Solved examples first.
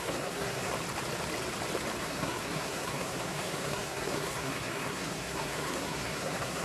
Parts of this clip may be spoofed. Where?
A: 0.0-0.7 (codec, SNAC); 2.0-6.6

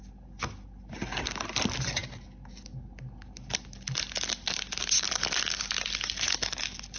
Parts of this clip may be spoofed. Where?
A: none

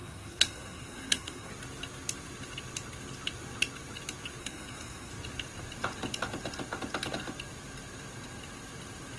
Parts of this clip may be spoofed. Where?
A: 0.0-1.5 (codec, SNAC); 4.4-5.1

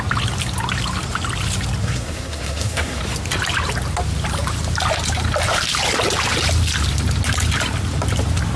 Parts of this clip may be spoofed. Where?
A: 1.8-3.0 (codec, SNAC)